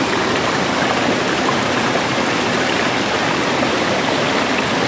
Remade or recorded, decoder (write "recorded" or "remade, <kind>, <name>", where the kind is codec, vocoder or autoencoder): recorded